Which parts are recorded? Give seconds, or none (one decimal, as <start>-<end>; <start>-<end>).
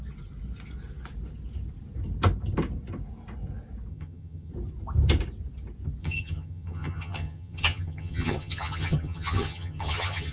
0.0-3.9; 4.5-6.0